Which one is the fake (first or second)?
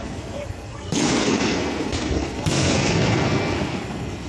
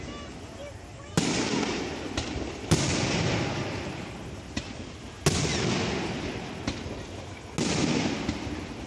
first